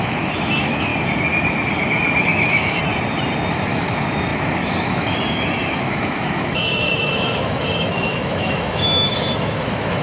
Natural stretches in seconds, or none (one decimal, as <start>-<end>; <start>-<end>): 0.9-2.2; 2.8-3.5